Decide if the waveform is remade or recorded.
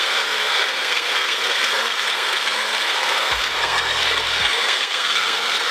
remade